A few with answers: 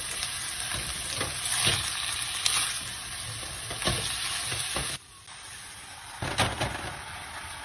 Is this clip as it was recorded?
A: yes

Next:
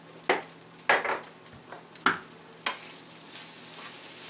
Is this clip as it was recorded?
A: yes